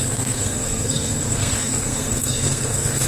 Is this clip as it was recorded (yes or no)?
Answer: no